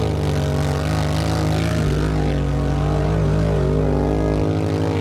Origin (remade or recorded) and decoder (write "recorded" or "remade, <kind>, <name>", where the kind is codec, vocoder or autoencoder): recorded